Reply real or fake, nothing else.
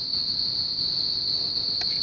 real